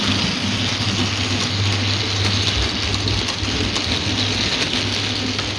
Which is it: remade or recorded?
recorded